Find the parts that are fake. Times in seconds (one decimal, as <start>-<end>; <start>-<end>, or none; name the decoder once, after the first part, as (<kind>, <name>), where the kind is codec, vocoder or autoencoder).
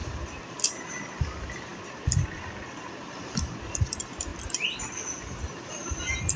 0.0-4.3 (vocoder, BigVGAN v2); 5.5-6.4